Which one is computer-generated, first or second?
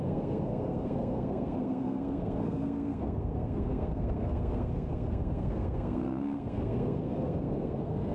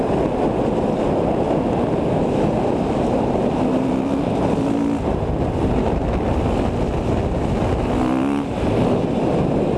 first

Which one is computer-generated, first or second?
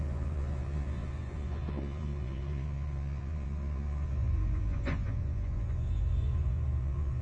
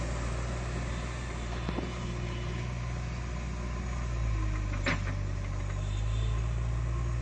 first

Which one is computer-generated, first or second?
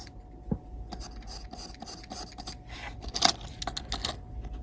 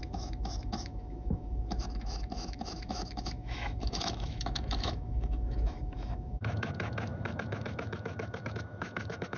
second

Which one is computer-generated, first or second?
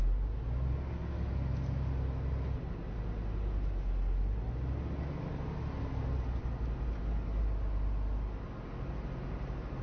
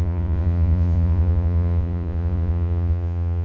second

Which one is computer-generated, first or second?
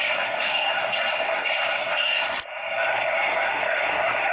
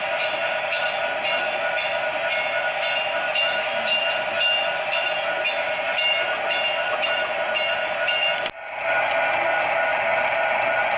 first